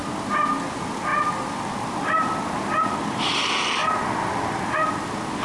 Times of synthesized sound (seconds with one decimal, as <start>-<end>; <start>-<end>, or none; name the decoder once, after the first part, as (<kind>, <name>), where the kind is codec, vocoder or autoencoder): none